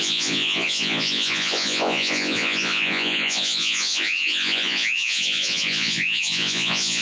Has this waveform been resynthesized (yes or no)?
yes